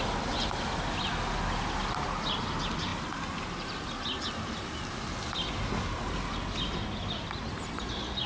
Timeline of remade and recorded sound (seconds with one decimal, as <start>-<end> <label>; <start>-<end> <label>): 0.0-8.3 recorded